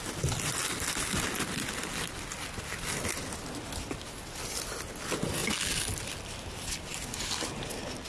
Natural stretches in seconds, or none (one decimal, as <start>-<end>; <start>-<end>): 0.0-8.1